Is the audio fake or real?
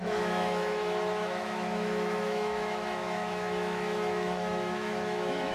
fake